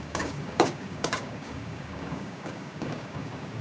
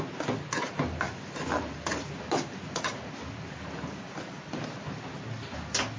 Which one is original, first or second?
second